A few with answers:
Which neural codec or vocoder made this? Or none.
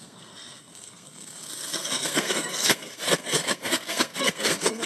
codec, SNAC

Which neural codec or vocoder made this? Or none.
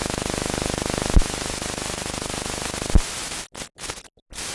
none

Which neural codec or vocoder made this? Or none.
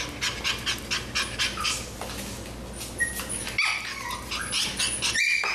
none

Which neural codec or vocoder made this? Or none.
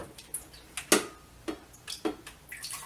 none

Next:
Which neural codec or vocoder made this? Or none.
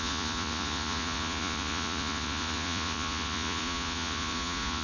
vocoder, Vocos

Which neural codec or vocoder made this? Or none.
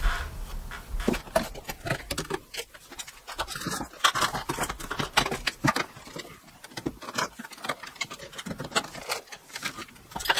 vocoder, BigVGAN v2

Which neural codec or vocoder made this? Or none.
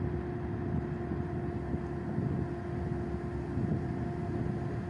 none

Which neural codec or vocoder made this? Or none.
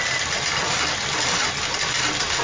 none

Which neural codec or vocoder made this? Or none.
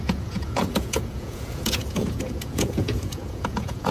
vocoder, Vocos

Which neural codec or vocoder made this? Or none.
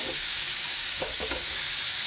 codec, DAC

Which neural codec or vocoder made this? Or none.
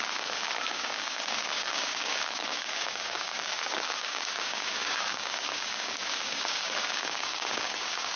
codec, DAC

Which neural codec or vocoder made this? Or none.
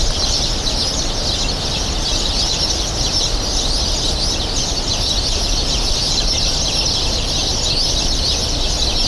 none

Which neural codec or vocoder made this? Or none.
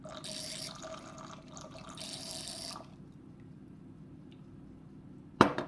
none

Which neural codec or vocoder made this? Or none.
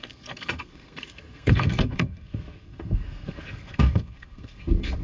codec, SNAC